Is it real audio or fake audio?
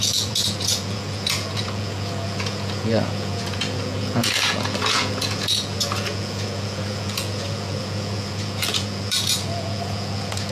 fake